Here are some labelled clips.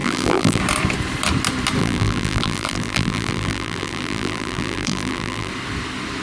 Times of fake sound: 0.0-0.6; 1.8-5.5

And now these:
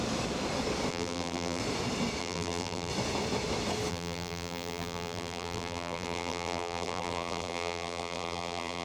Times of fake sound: 0.9-1.6; 2.2-2.9; 3.9-8.8

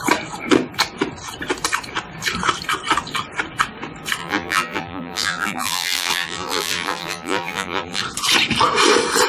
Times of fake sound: 4.2-8.0

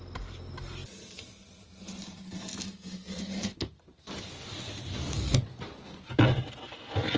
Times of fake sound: none

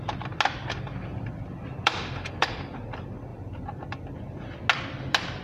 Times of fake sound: 1.1-2.6; 3.3-4.4